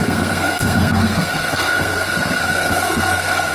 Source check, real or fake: fake